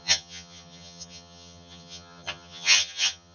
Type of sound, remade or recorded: remade